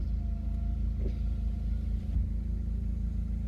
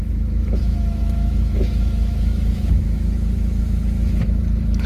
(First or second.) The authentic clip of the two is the first